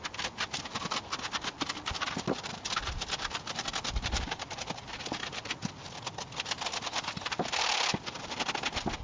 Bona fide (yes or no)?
yes